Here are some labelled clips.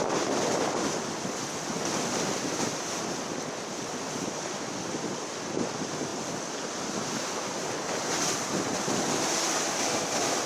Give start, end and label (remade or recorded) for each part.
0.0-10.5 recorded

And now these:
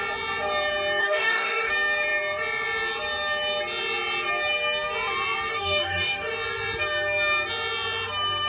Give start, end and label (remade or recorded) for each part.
0.0-1.0 recorded; 1.0-1.7 remade; 1.7-5.5 recorded; 5.5-6.3 remade; 6.3-8.5 recorded

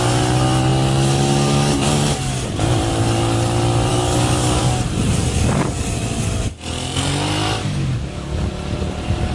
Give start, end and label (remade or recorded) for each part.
0.0-3.9 recorded; 3.9-4.6 remade; 4.6-7.6 recorded; 7.6-8.5 remade; 8.5-9.3 recorded

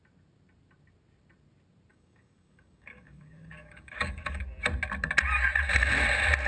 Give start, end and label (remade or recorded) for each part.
0.0-1.9 recorded; 1.9-4.4 remade; 4.4-6.5 recorded

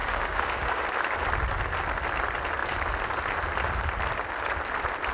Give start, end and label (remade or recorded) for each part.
0.0-0.8 remade; 0.8-5.1 recorded

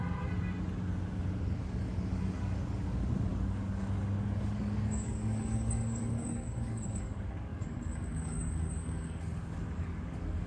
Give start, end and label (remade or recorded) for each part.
0.0-1.6 recorded; 1.6-10.5 remade

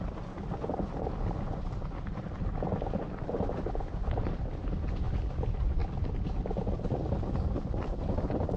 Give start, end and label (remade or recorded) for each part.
0.0-8.6 recorded

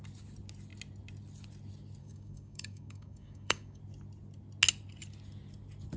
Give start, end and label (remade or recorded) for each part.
0.0-2.0 recorded; 2.0-3.8 remade; 3.8-6.0 recorded